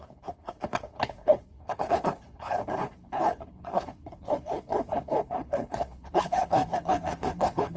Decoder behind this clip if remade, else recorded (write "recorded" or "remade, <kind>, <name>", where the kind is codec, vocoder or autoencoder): remade, codec, HILCodec